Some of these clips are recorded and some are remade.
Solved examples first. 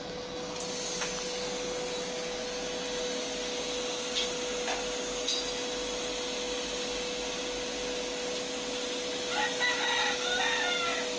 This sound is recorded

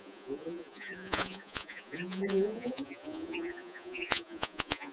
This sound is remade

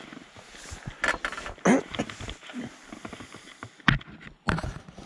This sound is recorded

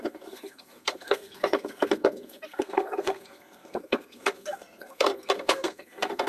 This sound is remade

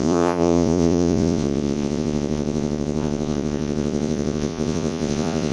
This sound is remade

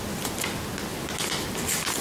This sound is recorded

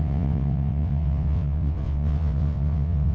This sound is remade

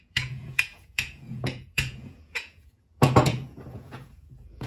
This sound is remade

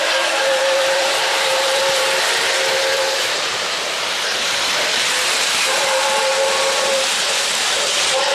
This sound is remade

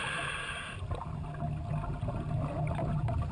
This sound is recorded